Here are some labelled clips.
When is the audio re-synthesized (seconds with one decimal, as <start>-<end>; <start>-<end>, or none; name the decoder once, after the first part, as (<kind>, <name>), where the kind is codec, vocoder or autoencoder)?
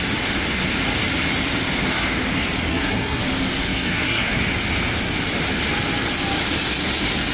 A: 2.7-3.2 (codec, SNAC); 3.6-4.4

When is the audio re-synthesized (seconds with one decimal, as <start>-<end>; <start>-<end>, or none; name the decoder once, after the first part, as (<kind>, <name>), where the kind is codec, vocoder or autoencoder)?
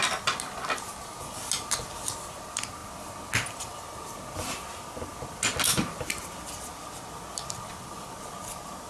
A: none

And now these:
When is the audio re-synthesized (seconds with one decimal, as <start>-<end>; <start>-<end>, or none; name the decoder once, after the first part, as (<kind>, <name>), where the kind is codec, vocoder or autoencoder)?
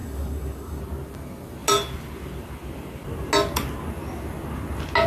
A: 0.0-0.8 (codec, DAC)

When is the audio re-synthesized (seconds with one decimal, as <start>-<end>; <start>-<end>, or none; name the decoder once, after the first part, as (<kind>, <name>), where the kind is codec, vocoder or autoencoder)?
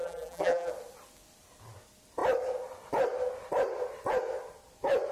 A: 0.0-0.7 (vocoder, BigVGAN v2)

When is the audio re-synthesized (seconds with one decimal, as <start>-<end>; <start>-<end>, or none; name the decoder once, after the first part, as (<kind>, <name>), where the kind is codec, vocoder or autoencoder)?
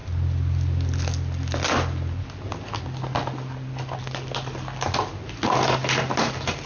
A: none